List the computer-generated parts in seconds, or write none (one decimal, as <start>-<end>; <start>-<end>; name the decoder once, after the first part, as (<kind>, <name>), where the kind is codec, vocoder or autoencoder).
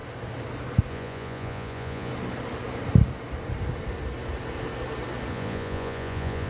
0.9-2.1 (vocoder, Vocos); 5.3-6.5